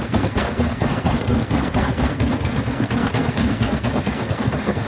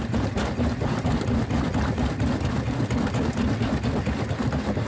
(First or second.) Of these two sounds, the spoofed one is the first